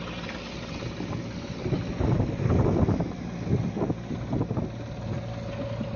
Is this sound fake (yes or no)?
no